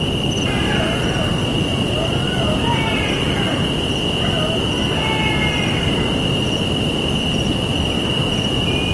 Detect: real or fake real